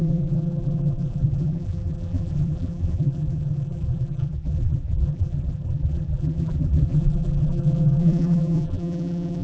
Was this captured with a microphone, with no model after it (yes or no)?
no